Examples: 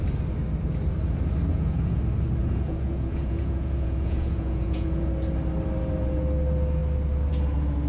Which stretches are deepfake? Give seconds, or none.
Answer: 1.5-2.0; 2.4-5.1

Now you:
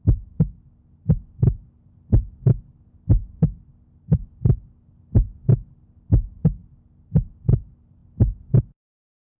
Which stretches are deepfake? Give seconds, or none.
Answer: none

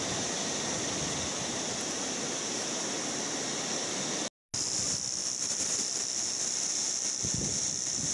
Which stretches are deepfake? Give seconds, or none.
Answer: none

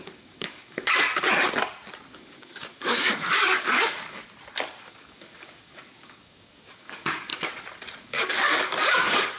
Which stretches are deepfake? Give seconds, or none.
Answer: 0.0-1.1; 2.1-4.2; 4.8-7.3; 8.0-9.4

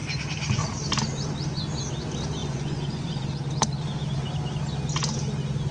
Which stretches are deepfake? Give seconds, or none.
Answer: 2.4-3.2

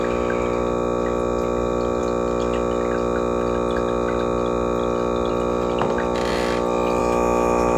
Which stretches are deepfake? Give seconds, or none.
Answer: 7.0-7.8

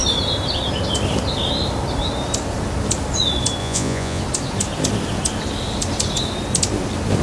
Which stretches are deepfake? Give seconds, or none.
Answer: 3.6-4.2

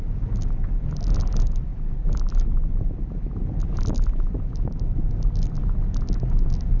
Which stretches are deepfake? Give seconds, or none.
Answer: none